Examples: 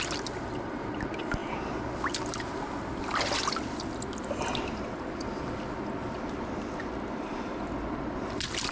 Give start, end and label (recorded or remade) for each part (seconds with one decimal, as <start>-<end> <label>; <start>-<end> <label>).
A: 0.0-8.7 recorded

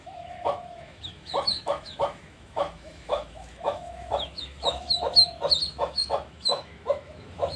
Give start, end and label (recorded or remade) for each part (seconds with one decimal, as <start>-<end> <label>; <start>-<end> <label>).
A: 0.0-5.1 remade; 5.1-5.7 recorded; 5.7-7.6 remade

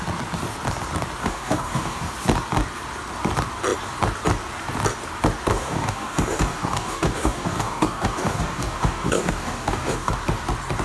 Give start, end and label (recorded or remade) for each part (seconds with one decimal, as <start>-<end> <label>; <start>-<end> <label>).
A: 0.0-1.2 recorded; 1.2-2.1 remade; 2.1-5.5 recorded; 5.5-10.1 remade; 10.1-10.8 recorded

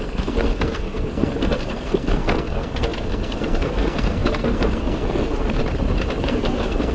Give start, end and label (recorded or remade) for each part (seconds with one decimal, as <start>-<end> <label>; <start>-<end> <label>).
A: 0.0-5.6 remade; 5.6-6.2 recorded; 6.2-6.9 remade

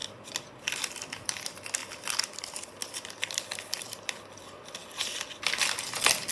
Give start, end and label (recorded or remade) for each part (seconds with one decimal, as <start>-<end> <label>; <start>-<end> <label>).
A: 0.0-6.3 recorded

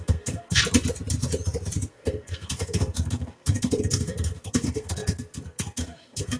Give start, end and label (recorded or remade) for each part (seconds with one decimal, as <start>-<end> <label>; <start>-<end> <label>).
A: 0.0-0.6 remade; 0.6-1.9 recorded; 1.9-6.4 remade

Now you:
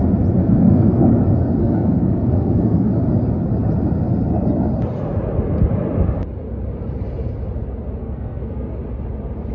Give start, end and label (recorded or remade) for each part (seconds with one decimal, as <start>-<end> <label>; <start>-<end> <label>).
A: 0.0-0.4 recorded; 0.4-1.0 remade; 1.0-1.6 recorded; 1.6-2.9 remade; 2.9-8.0 recorded; 8.0-8.7 remade; 8.7-9.5 recorded

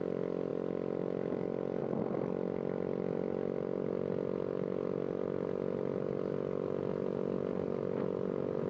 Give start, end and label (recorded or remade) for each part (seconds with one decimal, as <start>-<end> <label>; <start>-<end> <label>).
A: 0.0-8.7 recorded